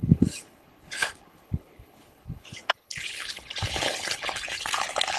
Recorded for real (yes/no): no